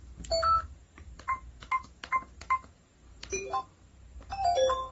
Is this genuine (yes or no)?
no